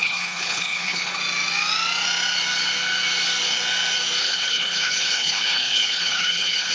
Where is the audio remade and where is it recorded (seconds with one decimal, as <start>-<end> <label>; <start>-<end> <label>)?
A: 0.0-1.2 remade; 1.2-4.2 recorded; 4.2-6.7 remade